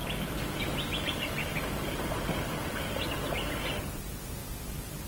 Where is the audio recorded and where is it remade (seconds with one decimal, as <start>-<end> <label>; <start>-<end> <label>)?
0.0-3.1 remade; 3.1-5.1 recorded